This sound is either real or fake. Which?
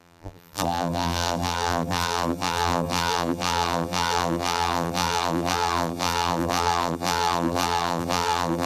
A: fake